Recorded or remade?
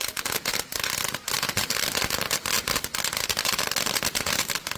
recorded